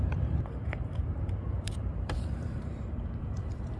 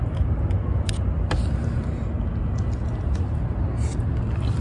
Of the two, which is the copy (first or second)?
first